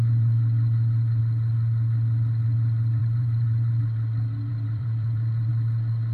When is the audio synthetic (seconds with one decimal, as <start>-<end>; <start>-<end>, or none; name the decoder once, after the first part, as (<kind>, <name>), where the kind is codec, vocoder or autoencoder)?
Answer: 3.0-3.8 (vocoder, BigVGAN v2); 4.5-5.5